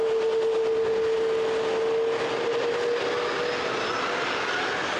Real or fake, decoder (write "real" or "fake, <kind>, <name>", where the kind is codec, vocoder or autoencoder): real